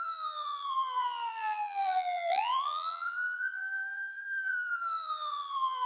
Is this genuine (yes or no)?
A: no